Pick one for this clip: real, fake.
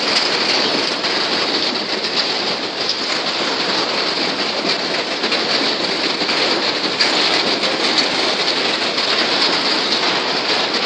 real